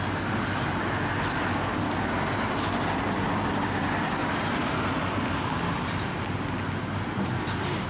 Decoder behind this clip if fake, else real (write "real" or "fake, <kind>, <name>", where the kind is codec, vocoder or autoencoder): real